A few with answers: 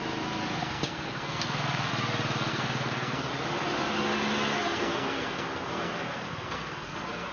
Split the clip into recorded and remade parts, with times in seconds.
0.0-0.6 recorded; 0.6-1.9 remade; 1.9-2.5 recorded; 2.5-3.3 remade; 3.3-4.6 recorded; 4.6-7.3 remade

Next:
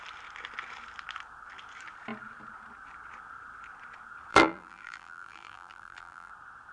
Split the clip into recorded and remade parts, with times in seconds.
0.0-4.3 recorded; 4.3-6.3 remade; 6.3-6.7 recorded

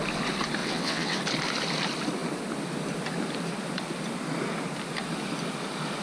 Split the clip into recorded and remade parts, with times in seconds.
0.0-0.6 recorded; 0.6-1.2 remade; 1.2-6.0 recorded

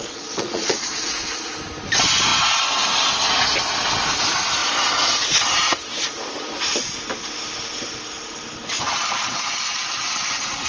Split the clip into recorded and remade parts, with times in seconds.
0.0-1.5 remade; 1.5-10.7 recorded

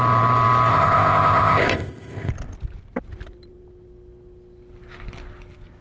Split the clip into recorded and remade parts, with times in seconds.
0.0-0.7 recorded; 0.7-2.3 remade; 2.3-5.8 recorded

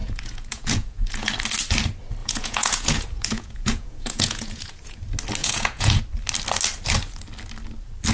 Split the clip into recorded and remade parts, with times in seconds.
0.0-1.3 remade; 1.3-2.2 recorded; 2.2-5.0 remade; 5.0-5.4 recorded; 5.4-6.0 remade; 6.0-8.1 recorded

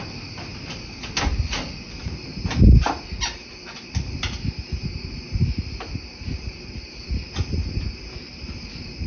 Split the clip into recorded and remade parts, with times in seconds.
0.0-9.1 recorded

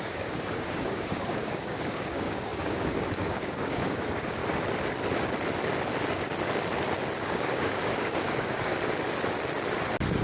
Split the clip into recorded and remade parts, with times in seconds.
0.0-4.4 remade; 4.4-7.2 recorded; 7.2-8.7 remade; 8.7-10.2 recorded